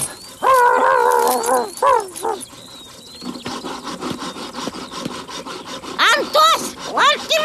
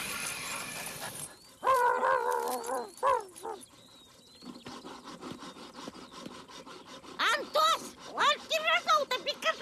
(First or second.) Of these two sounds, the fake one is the second